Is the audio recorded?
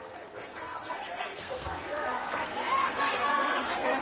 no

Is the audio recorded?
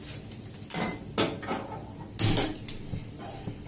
yes